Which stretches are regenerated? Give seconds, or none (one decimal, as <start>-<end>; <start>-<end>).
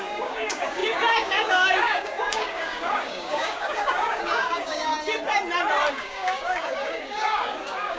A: 0.0-4.9; 5.9-8.0